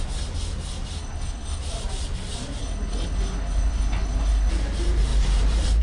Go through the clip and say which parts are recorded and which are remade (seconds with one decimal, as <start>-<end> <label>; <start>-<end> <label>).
0.0-1.0 recorded; 1.0-1.6 remade; 1.6-2.6 recorded; 2.6-4.5 remade; 4.5-5.8 recorded